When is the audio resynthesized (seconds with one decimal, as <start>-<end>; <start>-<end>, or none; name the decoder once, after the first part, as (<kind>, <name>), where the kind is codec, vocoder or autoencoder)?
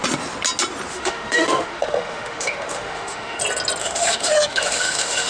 0.9-3.4 (autoencoder, DAC-VAE); 3.8-5.3